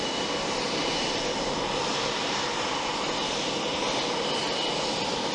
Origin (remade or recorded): recorded